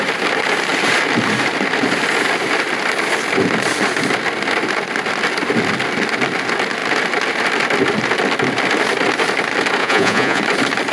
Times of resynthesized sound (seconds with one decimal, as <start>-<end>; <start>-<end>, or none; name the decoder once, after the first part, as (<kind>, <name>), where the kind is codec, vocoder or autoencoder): 9.8-10.4 (vocoder, Vocos)